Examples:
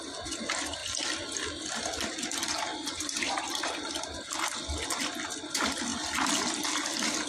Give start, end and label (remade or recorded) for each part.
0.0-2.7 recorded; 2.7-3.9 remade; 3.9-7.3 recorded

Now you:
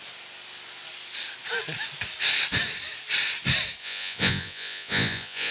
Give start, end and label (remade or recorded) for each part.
0.0-3.8 recorded; 3.8-5.5 remade

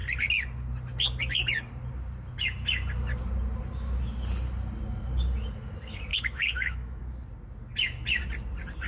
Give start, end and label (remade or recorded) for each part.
0.0-6.1 recorded; 6.1-7.0 remade; 7.0-8.9 recorded

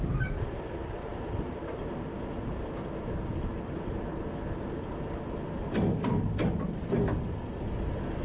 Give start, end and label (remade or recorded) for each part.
0.0-8.2 recorded

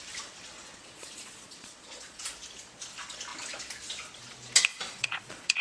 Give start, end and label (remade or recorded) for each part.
0.0-0.8 recorded; 0.8-2.2 remade; 2.2-4.7 recorded; 4.7-5.6 remade

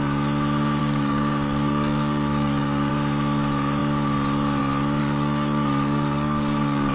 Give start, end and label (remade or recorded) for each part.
0.0-0.8 recorded; 0.8-2.9 remade; 2.9-5.0 recorded; 5.0-6.9 remade

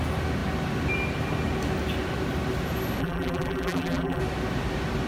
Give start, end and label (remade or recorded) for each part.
0.0-3.0 recorded; 3.0-4.2 remade; 4.2-5.1 recorded